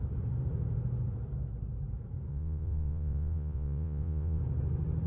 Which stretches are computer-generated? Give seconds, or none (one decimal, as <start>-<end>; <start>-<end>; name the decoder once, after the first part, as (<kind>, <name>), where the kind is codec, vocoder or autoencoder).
2.3-4.4 (vocoder, Vocos)